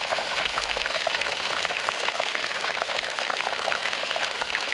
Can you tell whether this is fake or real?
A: fake